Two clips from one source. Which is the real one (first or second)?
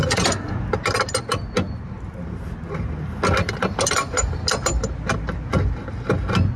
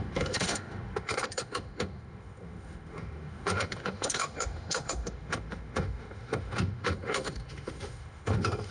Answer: first